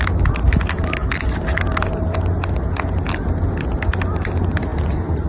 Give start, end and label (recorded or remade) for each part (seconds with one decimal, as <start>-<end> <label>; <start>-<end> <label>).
0.0-5.3 recorded